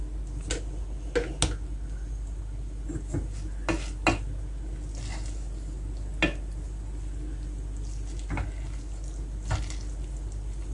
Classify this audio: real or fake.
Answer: real